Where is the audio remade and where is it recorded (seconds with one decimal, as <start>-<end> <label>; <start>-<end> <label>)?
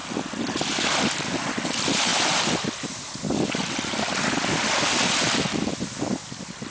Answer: 0.0-6.7 recorded